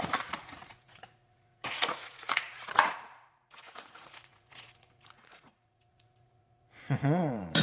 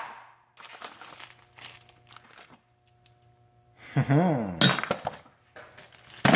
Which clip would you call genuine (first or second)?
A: second